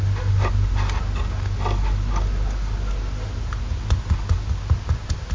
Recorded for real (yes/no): yes